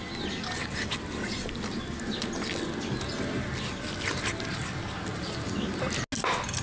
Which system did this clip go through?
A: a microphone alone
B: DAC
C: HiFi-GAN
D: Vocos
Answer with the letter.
A